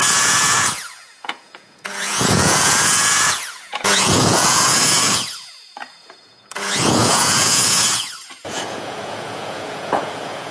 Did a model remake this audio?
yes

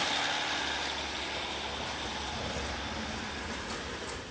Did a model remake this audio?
no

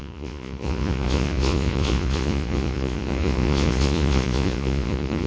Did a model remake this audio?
yes